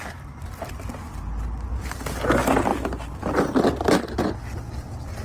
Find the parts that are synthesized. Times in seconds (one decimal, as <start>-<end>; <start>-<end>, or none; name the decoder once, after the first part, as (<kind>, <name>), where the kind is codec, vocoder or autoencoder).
none